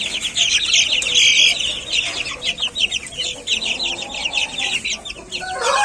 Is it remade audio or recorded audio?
recorded